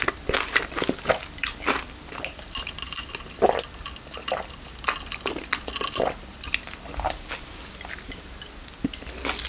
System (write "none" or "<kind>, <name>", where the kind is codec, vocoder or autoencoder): none